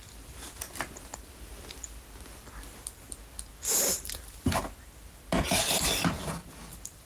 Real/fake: real